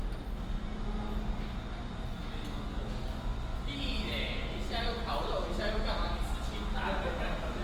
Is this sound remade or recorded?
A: recorded